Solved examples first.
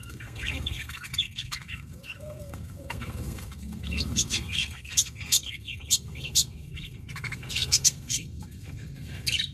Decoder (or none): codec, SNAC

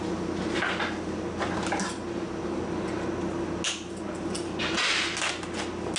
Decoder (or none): none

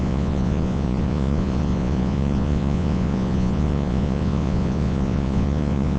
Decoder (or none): vocoder, Vocos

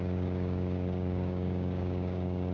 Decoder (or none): codec, DAC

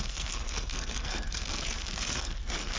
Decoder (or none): codec, SNAC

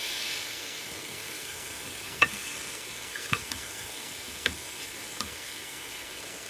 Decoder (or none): codec, SNAC